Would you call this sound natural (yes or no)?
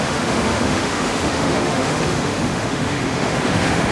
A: no